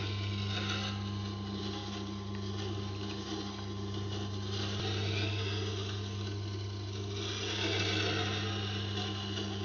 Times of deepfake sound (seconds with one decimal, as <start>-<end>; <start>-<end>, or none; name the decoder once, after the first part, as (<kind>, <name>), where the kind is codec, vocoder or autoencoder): none